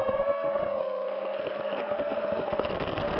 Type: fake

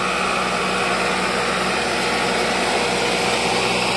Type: real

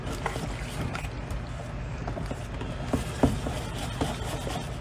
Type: real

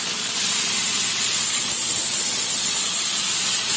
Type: fake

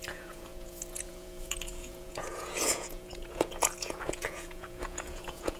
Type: fake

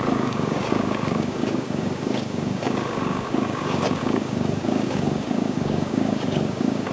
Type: fake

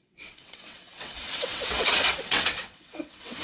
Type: fake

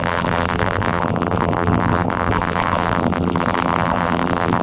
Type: fake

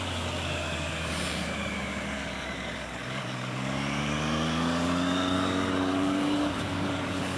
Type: fake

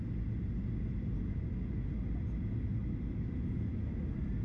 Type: real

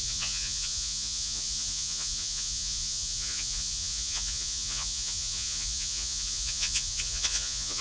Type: fake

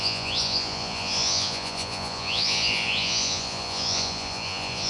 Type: fake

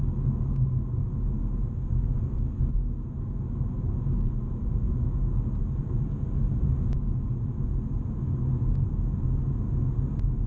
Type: real